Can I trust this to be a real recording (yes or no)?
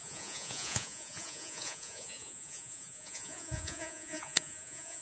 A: no